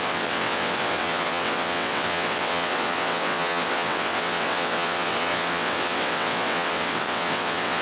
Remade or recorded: remade